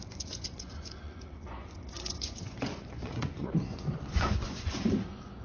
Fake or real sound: fake